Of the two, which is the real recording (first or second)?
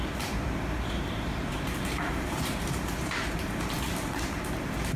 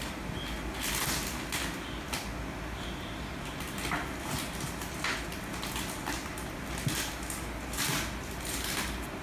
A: second